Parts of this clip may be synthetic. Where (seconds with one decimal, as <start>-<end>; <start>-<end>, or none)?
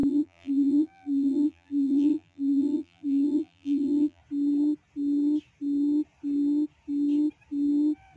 0.0-4.2